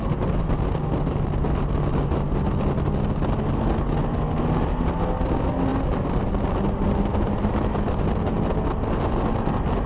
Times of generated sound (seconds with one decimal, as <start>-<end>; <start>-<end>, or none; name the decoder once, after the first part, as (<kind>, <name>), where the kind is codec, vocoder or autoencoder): none